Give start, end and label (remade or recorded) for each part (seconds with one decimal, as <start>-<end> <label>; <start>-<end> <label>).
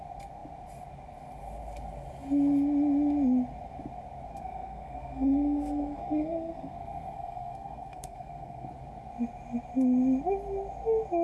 0.0-4.3 recorded; 4.3-8.7 remade; 8.7-11.2 recorded